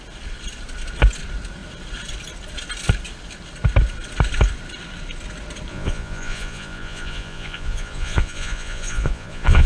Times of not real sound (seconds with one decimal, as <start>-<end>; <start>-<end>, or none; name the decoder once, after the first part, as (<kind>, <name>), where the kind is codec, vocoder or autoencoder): 5.7-9.7 (vocoder, Vocos)